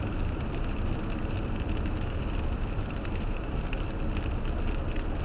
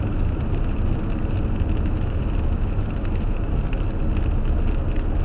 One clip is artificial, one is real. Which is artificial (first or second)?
first